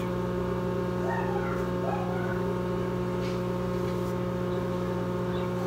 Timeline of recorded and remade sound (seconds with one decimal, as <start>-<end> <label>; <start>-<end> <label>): 0.0-5.7 recorded